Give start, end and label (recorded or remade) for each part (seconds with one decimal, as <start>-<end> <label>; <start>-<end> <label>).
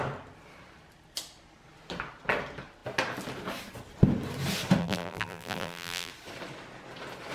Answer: 0.0-4.8 recorded; 4.8-6.1 remade; 6.1-7.3 recorded